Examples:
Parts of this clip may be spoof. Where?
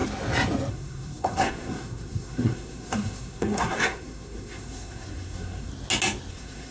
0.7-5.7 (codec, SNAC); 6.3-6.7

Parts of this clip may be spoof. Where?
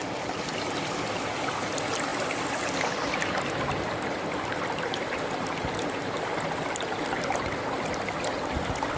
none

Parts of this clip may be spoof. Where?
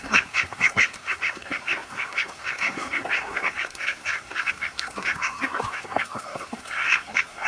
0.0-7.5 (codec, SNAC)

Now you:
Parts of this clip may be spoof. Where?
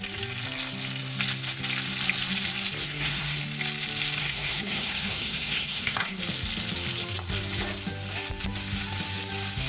2.8-3.4 (codec, SNAC); 4.2-6.2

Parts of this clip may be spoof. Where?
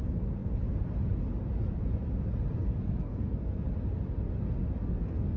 2.6-3.6 (codec, SNAC); 4.8-5.4